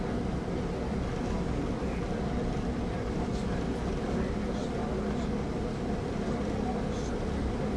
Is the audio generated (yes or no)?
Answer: no